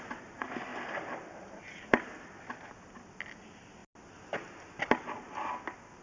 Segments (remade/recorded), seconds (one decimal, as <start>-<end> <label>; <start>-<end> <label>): 0.0-6.0 recorded